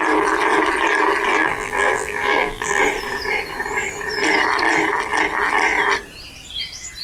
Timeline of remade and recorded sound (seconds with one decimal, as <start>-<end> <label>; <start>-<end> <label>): 0.0-1.3 recorded; 1.3-2.8 remade; 2.8-7.0 recorded